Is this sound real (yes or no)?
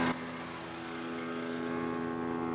yes